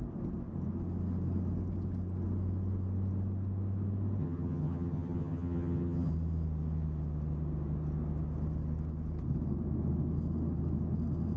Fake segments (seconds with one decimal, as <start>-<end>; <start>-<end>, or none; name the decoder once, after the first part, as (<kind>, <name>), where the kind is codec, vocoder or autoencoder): 4.2-6.1 (vocoder, HiFi-GAN)